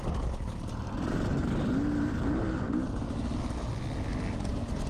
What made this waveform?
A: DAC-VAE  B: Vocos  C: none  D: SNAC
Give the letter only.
C